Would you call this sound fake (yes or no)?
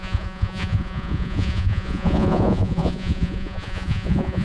yes